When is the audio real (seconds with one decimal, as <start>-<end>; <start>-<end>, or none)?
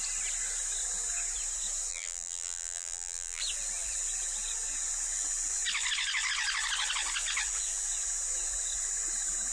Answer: 0.0-1.9; 3.4-9.5